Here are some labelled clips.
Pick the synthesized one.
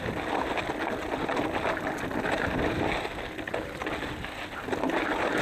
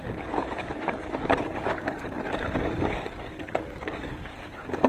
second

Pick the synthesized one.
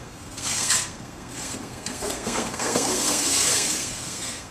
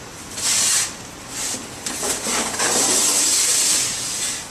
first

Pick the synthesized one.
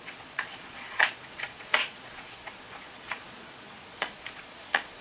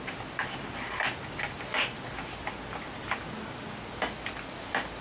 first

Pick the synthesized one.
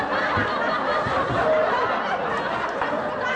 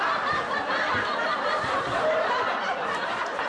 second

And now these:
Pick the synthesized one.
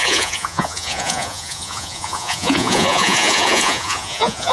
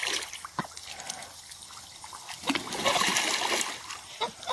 first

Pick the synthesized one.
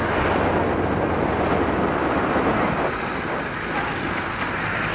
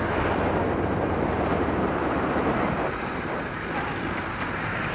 second